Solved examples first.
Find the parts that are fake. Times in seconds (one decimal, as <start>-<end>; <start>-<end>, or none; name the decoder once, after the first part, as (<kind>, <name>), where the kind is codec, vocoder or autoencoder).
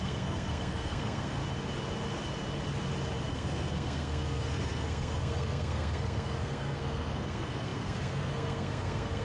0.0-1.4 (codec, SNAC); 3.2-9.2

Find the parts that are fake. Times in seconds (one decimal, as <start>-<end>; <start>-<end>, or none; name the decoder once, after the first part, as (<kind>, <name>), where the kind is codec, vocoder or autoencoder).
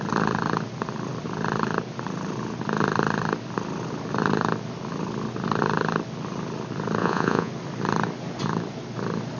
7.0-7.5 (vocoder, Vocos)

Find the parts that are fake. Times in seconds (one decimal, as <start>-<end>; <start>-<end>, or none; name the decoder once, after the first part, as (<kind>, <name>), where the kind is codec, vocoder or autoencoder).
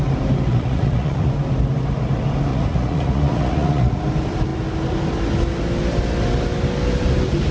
0.5-1.3 (vocoder, Vocos); 2.5-4.0